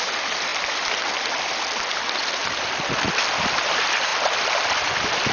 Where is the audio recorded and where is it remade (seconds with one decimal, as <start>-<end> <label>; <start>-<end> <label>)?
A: 0.0-0.5 recorded; 0.5-1.9 remade; 1.9-5.3 recorded